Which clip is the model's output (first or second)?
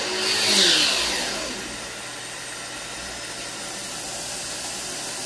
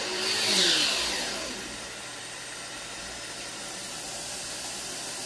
second